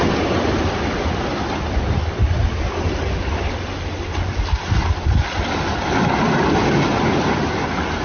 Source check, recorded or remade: recorded